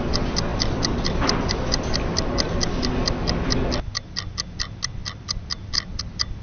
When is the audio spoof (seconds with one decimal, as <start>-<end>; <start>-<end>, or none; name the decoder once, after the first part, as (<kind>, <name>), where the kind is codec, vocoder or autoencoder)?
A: none